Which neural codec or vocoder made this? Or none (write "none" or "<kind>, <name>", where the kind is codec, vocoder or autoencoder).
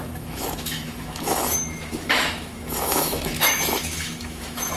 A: autoencoder, DAC-VAE